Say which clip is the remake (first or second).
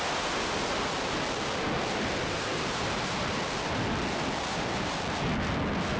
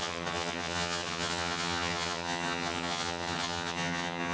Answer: second